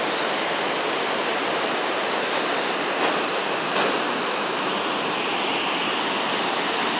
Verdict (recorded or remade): recorded